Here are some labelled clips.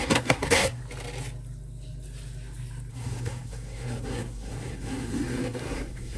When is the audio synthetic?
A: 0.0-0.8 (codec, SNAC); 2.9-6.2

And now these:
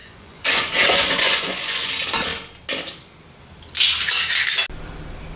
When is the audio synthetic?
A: 0.0-1.9 (vocoder, Vocos)

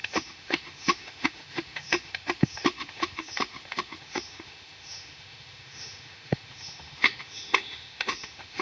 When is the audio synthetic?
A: 0.0-8.6 (autoencoder, DAC-VAE)

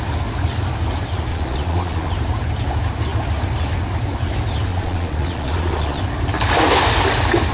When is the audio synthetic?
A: 1.3-2.1 (vocoder, Vocos); 4.7-6.0

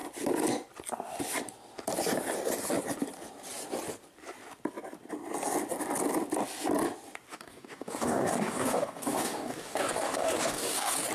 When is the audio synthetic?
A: 7.3-11.1 (codec, DAC)